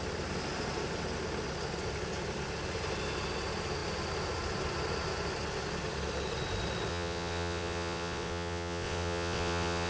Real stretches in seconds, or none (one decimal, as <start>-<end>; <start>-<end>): 0.0-6.9